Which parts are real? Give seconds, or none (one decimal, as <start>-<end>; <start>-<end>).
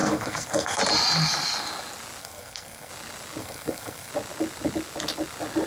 0.8-2.2; 2.9-3.4; 4.1-5.7